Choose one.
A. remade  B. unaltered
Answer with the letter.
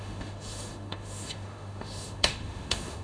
A